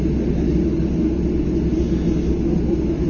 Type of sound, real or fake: real